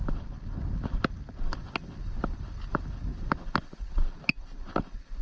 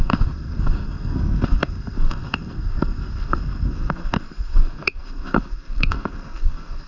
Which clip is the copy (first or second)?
second